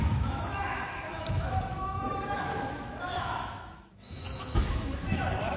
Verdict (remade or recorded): remade